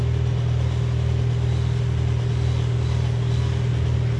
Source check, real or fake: real